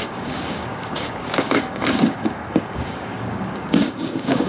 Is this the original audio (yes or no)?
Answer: no